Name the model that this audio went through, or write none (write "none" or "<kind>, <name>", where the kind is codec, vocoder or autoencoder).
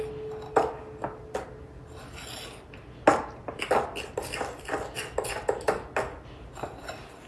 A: none